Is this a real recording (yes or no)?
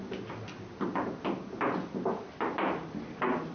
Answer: yes